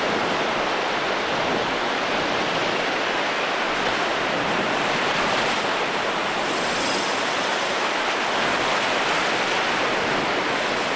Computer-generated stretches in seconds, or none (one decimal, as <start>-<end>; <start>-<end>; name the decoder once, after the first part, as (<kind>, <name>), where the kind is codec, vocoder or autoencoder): none